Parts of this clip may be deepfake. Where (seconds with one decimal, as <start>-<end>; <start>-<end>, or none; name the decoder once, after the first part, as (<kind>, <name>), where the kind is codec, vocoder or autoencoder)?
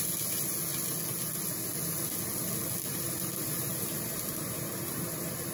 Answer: none